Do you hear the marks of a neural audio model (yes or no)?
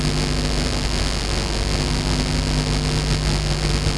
no